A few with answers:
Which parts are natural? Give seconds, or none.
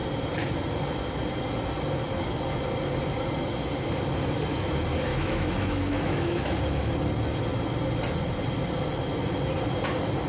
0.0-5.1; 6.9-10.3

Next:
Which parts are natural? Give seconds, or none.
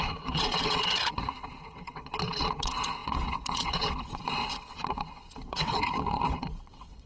none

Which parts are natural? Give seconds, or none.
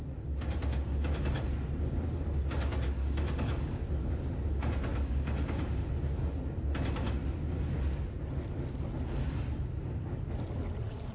0.0-3.0; 3.9-4.9; 5.6-11.1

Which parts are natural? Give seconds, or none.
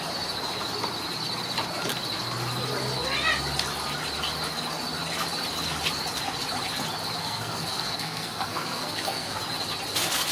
0.0-7.2; 9.4-10.3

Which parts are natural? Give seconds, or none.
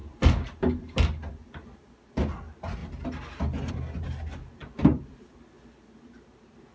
0.0-6.7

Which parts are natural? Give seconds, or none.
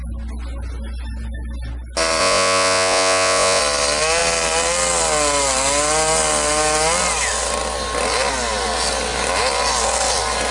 0.0-2.2; 3.6-10.5